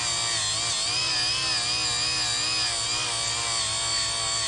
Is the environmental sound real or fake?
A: real